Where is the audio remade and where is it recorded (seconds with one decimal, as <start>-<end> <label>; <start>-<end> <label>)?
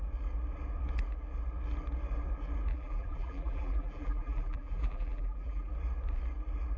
0.0-2.7 recorded; 2.7-5.7 remade; 5.7-6.8 recorded